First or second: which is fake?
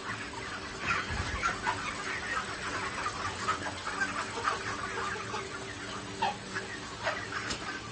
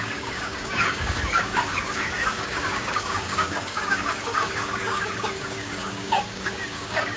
second